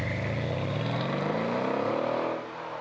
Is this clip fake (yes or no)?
no